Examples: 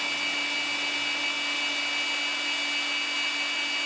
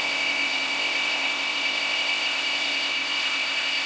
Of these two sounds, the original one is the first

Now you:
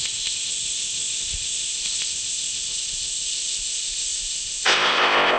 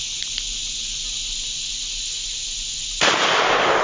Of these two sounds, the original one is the second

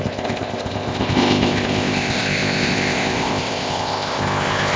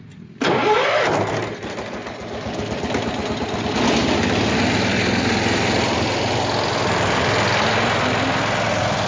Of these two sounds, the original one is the second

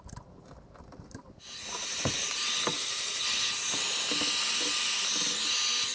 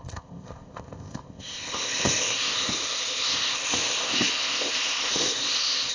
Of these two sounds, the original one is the first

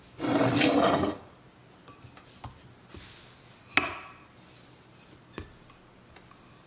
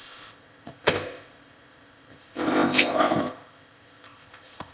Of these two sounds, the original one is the first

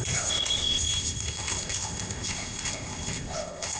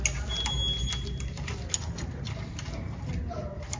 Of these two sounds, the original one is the second